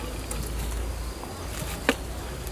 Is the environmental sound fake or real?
real